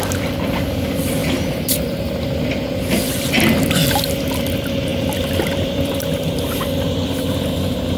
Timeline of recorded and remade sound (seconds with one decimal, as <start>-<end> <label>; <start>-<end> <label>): 0.0-4.9 recorded; 4.9-6.0 remade; 6.0-8.0 recorded